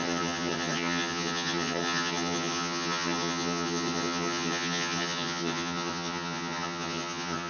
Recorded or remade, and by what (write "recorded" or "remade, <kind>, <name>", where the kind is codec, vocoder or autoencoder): remade, vocoder, HiFi-GAN